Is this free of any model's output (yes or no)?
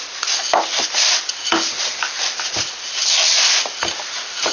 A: yes